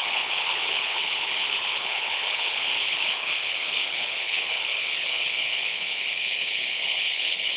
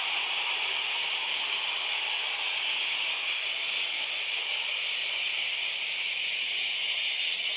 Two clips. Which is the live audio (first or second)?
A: second